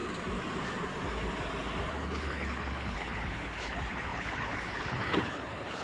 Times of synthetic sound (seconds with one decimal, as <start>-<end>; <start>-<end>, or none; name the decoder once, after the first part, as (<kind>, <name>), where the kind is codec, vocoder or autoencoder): 1.9-5.8 (codec, HILCodec)